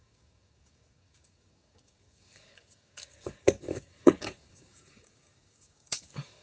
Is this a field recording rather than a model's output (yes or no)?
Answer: no